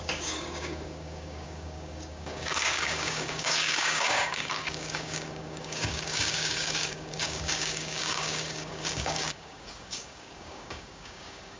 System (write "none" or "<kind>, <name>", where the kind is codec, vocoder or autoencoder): codec, DAC